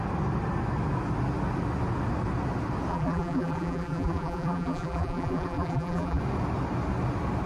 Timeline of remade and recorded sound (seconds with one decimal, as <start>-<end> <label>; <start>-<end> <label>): 0.0-2.9 recorded; 2.9-6.2 remade; 6.2-7.5 recorded